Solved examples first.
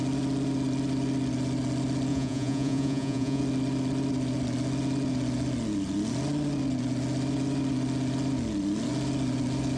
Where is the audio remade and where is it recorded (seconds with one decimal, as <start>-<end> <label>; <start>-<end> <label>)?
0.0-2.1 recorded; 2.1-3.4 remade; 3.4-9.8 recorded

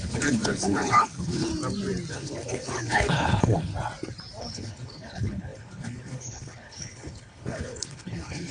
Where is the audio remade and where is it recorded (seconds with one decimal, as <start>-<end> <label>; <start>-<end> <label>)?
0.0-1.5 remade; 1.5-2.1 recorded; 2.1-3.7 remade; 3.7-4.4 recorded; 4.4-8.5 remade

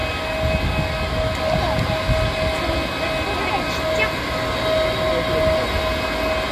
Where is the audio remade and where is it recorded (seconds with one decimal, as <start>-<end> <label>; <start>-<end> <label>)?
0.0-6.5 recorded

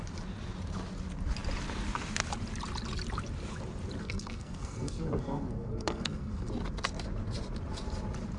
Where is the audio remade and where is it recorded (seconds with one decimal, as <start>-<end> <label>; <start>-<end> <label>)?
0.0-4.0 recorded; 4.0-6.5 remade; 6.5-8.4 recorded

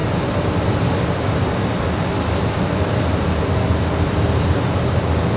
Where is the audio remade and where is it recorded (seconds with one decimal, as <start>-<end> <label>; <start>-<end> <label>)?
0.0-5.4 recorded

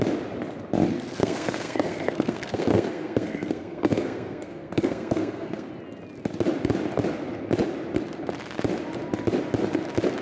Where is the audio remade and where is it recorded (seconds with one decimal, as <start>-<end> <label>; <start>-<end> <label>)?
0.0-1.2 recorded; 1.2-5.7 remade; 5.7-10.2 recorded

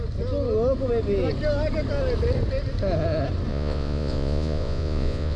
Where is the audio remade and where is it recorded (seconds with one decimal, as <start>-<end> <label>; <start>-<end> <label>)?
0.0-3.5 recorded; 3.5-5.4 remade